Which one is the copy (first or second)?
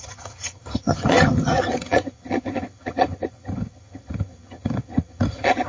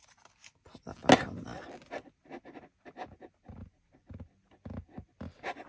first